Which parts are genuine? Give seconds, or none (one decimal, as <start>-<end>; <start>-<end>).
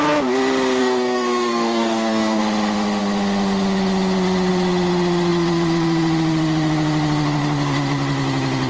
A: 0.0-0.8; 2.4-8.7